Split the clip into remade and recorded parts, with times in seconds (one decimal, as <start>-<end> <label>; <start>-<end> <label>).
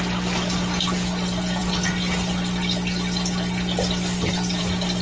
0.0-5.0 recorded